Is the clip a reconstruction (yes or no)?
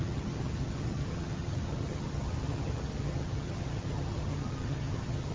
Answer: yes